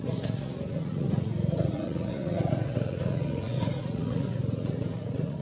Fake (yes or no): yes